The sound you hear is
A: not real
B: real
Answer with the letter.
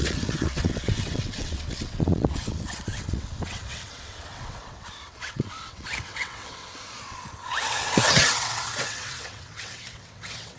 A